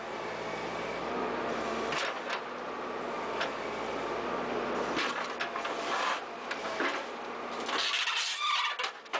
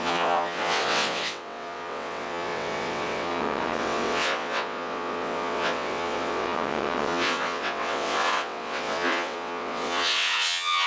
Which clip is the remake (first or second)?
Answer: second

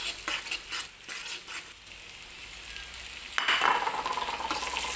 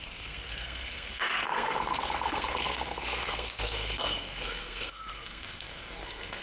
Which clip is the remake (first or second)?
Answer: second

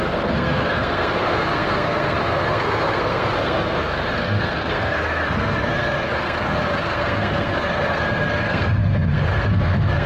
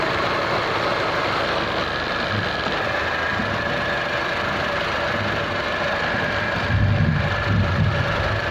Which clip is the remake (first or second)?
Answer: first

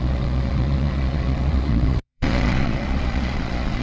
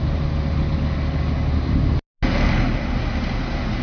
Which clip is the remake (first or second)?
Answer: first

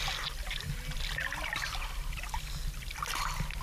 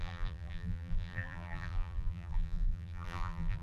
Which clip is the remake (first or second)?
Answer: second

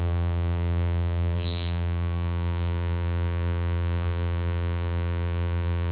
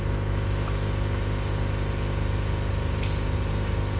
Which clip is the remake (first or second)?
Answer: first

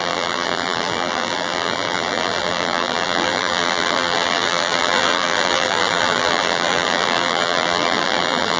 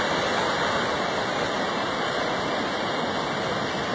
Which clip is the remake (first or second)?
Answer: first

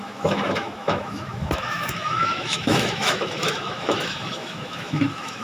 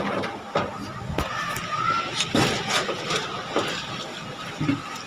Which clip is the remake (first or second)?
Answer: first